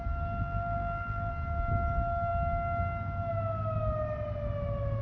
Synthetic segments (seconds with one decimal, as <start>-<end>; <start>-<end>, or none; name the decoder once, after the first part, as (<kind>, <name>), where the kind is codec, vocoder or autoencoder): 0.4-1.3 (vocoder, BigVGAN v2)